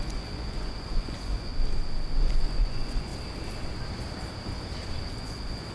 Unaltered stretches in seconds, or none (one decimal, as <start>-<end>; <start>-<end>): 1.5-2.2; 3.1-5.1